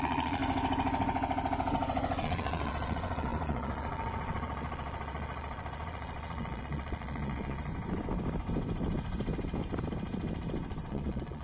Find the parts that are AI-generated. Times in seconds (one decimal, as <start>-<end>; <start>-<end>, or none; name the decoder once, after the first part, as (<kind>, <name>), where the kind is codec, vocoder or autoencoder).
0.0-0.4 (vocoder, Vocos); 2.2-7.7; 10.9-11.4